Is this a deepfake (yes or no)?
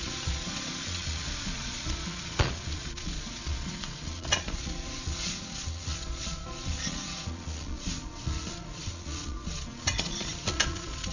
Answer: yes